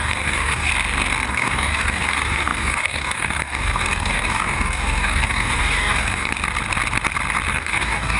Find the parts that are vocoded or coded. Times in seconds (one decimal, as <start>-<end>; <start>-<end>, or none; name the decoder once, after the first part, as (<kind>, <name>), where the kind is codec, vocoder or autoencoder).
0.0-0.7 (codec, DAC); 1.3-6.3; 7.5-8.2